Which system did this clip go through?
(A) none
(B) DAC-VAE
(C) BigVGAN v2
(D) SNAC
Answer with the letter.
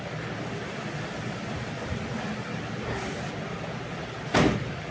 A